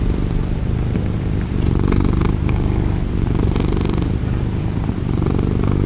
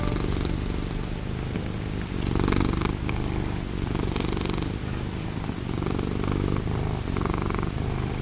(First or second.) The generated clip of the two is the first